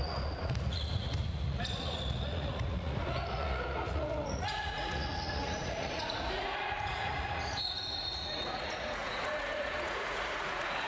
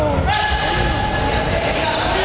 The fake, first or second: first